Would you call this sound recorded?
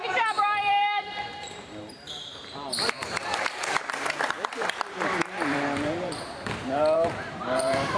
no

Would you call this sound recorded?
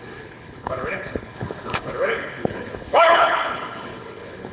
no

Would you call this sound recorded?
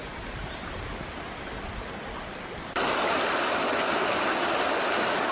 yes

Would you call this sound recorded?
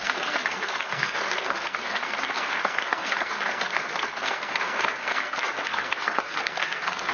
no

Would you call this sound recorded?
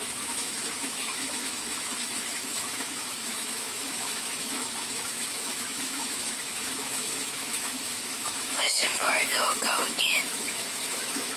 no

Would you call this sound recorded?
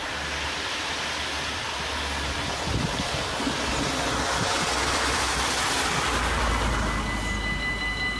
yes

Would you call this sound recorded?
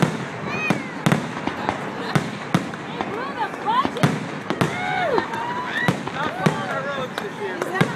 yes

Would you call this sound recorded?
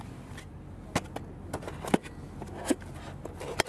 yes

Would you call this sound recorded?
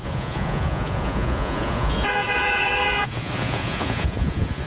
no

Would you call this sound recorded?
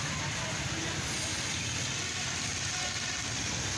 yes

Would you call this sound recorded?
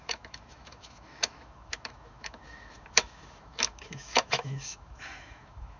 no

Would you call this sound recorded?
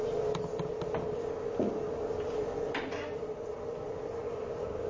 yes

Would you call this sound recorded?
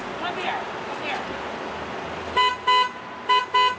yes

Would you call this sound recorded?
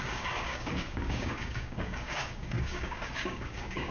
no